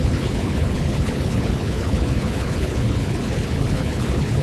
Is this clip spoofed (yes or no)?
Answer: yes